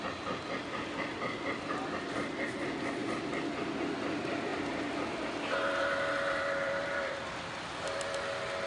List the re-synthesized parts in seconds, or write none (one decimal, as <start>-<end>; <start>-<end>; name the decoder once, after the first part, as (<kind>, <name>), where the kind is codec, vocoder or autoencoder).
none